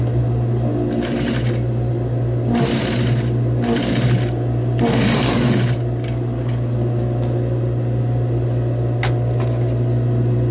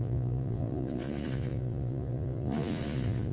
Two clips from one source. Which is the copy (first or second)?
second